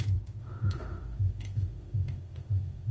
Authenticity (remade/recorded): remade